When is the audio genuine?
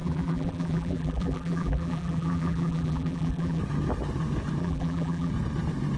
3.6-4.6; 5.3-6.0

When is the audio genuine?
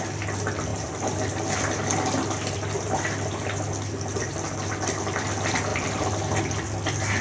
0.0-0.7; 5.0-5.7; 6.4-7.2